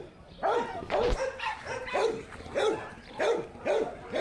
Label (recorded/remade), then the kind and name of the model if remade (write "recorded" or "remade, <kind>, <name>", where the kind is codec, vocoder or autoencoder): recorded